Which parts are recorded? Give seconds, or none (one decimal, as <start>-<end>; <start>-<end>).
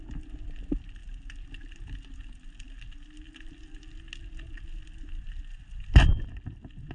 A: 0.0-6.9